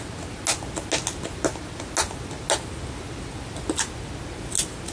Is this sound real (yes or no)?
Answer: yes